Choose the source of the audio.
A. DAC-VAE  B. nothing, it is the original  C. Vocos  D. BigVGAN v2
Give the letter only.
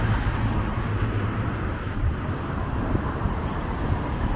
D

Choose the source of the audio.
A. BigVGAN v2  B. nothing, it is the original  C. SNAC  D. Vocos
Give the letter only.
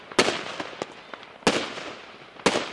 B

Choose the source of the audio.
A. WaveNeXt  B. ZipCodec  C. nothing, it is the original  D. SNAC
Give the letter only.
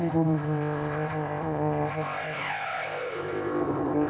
B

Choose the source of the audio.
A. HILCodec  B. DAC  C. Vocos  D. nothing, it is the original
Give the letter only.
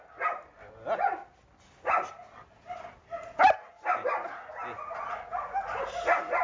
D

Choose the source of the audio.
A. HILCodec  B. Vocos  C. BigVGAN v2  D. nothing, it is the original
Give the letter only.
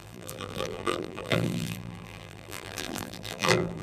C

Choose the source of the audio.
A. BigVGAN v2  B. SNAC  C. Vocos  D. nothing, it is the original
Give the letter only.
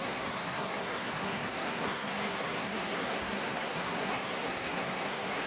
B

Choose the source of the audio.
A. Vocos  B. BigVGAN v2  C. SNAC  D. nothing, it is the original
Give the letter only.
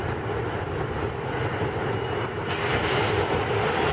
D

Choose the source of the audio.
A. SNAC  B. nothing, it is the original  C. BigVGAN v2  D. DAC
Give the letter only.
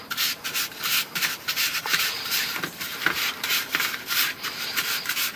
C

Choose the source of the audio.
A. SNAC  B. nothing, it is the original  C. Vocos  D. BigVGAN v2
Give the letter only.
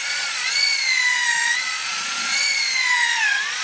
C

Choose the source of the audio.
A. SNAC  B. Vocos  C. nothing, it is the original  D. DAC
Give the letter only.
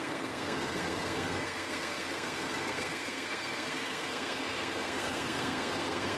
A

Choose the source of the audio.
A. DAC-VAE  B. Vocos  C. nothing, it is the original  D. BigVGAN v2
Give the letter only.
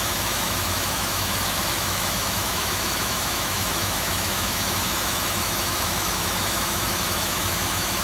A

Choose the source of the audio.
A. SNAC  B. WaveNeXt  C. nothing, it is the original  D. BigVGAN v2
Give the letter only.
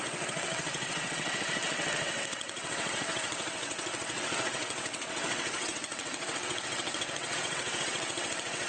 B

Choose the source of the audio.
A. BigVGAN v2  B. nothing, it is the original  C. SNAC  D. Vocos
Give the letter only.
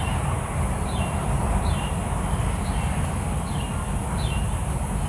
B